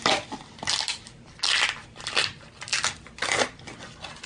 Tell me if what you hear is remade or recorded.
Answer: recorded